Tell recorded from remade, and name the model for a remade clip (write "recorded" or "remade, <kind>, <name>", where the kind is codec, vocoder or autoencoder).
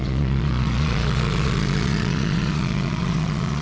remade, vocoder, Vocos